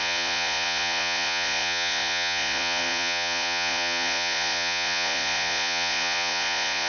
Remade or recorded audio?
remade